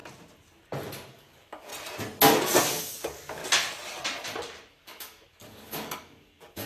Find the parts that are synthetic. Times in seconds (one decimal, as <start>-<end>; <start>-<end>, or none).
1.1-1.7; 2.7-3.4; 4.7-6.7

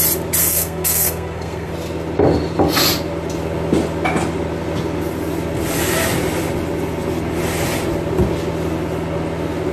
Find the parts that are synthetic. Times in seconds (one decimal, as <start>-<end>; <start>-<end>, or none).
0.4-1.7

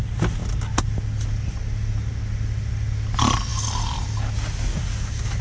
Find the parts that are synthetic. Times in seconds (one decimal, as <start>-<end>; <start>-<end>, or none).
none

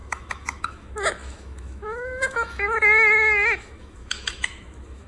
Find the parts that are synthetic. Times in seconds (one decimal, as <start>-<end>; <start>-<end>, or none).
0.0-5.1

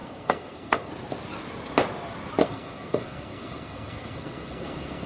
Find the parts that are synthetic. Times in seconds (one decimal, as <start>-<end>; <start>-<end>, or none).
0.0-0.9; 2.4-5.1

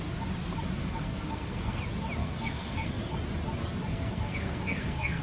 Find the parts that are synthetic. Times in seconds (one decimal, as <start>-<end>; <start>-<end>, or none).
0.8-1.8; 2.2-2.9; 3.9-5.2

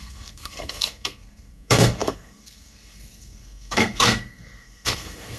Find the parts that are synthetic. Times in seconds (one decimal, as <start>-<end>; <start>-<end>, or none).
0.0-5.4